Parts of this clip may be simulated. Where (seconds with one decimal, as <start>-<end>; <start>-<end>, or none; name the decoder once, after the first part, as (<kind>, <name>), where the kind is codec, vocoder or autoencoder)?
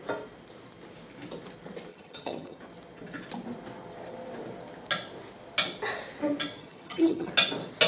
1.9-2.6 (vocoder, HiFi-GAN); 6.6-7.3